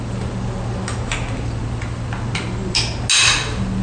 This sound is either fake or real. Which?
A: real